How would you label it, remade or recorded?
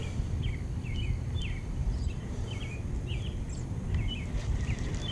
remade